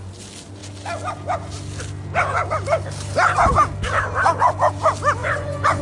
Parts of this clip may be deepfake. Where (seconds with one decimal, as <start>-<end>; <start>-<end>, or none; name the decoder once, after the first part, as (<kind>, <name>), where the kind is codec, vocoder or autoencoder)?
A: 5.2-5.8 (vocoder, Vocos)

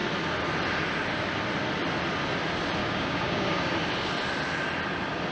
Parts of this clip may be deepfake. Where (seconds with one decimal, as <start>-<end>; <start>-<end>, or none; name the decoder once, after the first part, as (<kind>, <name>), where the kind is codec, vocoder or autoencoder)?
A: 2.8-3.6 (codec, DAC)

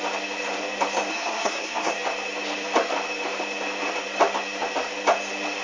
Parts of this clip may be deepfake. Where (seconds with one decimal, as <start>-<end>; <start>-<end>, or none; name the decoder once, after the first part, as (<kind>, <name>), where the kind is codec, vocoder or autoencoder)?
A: 1.1-1.9 (codec, SNAC)

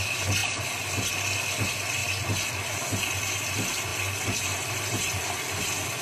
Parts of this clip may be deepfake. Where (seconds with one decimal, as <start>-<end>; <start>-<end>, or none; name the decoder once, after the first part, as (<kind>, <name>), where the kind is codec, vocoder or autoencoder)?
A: 2.0-2.5 (vocoder, BigVGAN v2); 3.9-5.6

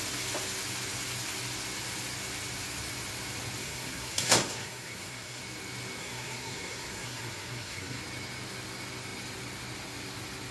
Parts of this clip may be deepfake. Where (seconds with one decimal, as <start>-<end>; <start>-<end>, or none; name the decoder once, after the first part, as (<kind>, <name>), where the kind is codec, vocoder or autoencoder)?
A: 3.6-5.4 (codec, SNAC); 6.0-8.0

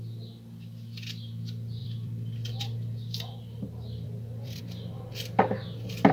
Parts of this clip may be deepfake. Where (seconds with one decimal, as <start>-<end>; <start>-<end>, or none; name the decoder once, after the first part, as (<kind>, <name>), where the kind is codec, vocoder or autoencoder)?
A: 1.8-4.6 (vocoder, BigVGAN v2)